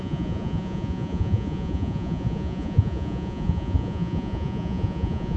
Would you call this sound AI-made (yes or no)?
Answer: yes